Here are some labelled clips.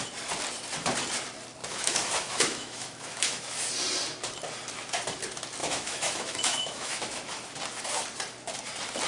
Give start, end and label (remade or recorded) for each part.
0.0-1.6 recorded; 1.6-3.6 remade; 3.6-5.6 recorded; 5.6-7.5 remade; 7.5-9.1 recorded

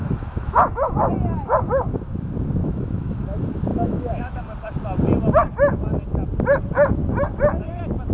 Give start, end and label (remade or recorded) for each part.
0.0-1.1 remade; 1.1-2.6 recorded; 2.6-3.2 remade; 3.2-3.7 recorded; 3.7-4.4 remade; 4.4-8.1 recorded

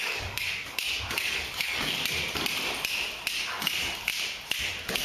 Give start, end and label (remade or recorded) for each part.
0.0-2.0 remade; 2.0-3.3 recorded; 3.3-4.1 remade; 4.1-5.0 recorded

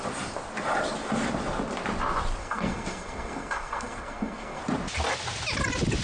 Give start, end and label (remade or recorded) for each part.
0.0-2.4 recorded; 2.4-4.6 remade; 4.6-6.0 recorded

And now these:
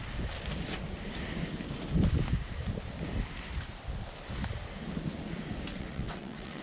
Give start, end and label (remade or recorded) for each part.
0.0-5.7 recorded; 5.7-6.6 remade

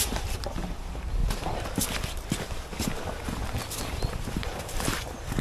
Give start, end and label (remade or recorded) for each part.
0.0-1.2 remade; 1.2-4.2 recorded; 4.2-5.4 remade

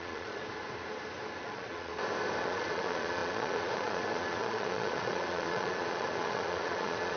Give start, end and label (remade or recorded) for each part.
0.0-0.4 remade; 0.4-1.4 recorded; 1.4-1.9 remade; 1.9-2.4 recorded; 2.4-7.2 remade

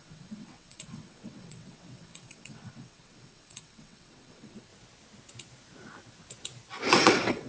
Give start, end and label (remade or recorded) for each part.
0.0-4.7 remade; 4.7-6.9 recorded; 6.9-7.5 remade